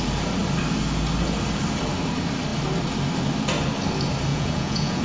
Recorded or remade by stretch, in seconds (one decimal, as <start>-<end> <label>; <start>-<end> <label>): 0.0-4.3 recorded; 4.3-5.0 remade